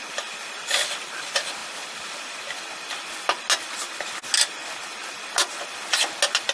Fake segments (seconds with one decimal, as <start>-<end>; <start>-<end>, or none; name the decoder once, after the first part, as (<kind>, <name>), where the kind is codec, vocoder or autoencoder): none